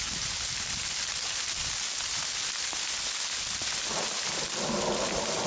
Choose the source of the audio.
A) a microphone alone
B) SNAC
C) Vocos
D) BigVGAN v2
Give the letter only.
A